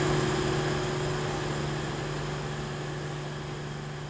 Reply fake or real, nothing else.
real